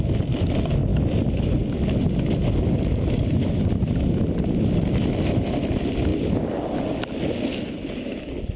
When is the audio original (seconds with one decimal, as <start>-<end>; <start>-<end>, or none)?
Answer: 0.0-8.6